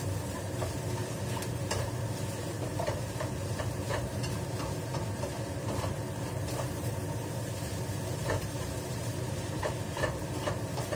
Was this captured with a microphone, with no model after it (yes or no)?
no